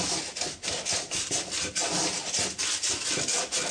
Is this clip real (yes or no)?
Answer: yes